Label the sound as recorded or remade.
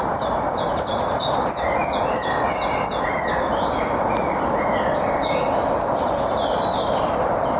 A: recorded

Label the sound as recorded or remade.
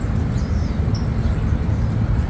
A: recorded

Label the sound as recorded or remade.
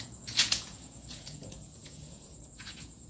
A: remade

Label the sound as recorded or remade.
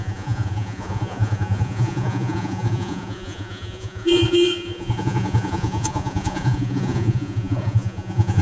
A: remade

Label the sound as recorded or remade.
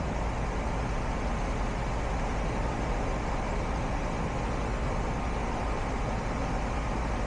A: recorded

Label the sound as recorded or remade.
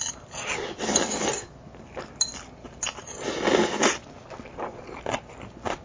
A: recorded